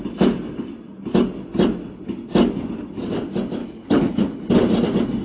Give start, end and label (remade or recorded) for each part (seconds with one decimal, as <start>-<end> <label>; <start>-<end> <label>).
0.0-3.6 recorded; 3.6-4.5 remade; 4.5-5.2 recorded